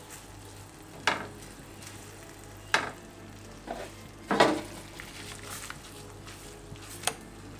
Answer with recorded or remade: recorded